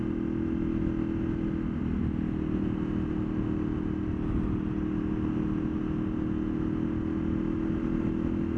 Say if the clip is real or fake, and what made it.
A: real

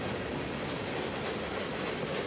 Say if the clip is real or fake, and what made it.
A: real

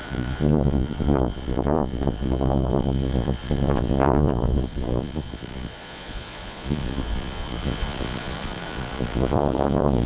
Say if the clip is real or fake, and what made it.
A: fake, vocoder, Vocos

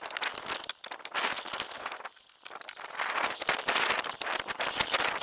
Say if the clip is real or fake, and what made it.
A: real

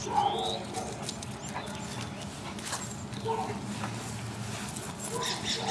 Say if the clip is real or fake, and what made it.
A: real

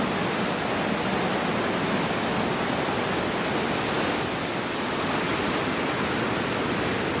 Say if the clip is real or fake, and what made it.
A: real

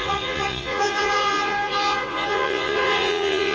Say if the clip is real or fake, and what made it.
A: fake, vocoder, Vocos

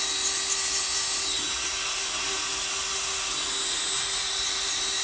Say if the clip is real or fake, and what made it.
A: real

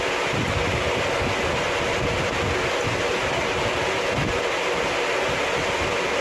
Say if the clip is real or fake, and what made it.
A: real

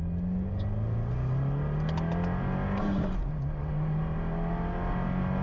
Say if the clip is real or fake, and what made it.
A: real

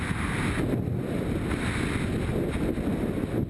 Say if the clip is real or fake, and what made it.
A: real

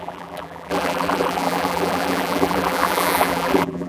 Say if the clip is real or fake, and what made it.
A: fake, vocoder, BigVGAN v2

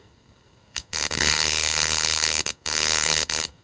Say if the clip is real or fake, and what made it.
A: fake, codec, SNAC